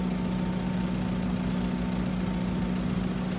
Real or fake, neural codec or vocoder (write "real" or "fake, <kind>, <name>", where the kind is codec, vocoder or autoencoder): real